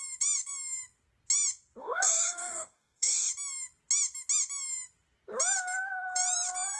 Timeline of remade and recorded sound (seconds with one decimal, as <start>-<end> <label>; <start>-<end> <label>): 0.0-1.8 recorded; 1.8-3.3 remade; 3.3-6.8 recorded